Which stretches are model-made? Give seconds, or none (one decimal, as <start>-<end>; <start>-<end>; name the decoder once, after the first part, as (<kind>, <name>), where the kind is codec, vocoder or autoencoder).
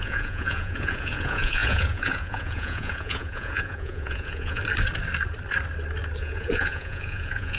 0.0-4.6 (vocoder, Vocos); 6.2-7.6